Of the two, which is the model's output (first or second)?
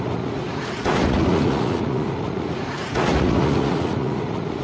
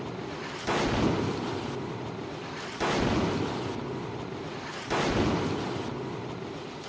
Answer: first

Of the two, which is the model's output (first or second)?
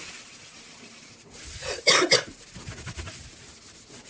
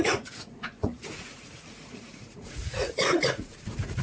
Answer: second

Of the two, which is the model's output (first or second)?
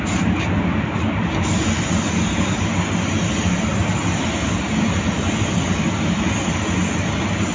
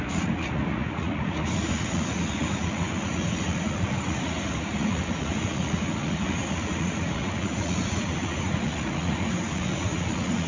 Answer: second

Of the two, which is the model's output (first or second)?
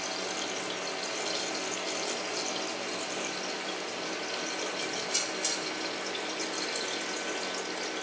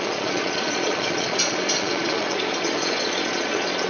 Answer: second